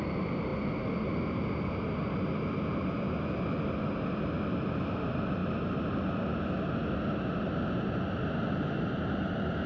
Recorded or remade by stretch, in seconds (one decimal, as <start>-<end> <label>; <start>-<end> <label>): 0.0-9.7 recorded